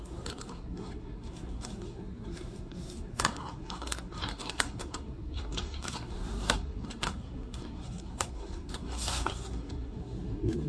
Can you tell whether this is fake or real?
fake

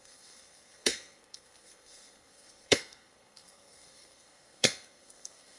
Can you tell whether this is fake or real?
fake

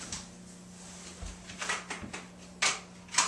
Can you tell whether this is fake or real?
real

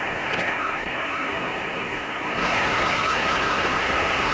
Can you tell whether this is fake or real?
fake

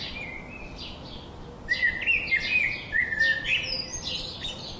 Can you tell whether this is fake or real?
real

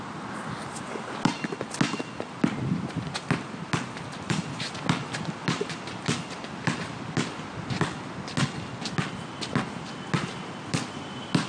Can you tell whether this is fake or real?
real